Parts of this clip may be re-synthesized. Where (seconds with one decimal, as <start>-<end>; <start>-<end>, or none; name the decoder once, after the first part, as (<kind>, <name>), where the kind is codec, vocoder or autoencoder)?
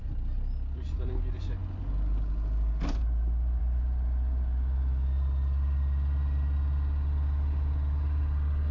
none